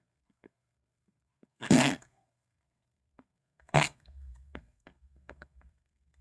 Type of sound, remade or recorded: remade